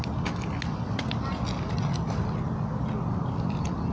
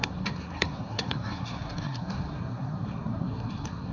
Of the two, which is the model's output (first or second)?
second